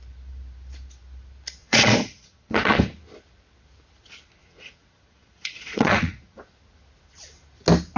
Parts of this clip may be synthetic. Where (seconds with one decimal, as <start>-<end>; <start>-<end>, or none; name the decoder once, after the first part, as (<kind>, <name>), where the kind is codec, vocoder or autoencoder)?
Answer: 1.6-2.8 (vocoder, Vocos); 4.4-6.4